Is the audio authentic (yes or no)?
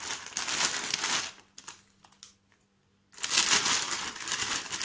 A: yes